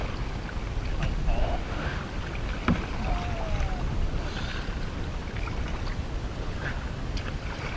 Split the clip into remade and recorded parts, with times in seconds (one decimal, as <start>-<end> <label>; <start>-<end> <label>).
0.0-1.4 recorded; 1.4-2.0 remade; 2.0-7.8 recorded